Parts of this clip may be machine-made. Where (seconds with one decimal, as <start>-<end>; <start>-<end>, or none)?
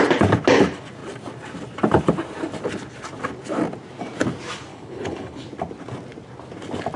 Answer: 4.7-5.5